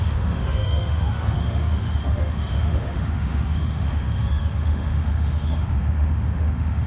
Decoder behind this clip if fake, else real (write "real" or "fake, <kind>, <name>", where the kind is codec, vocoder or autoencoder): fake, autoencoder, DAC-VAE